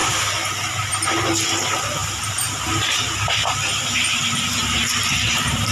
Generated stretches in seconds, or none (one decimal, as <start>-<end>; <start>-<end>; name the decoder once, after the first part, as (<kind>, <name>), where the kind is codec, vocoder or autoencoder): 0.9-2.0 (vocoder, BigVGAN v2); 5.0-5.7